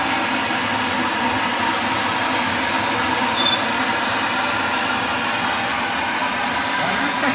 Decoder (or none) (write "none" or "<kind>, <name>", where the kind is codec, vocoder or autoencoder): none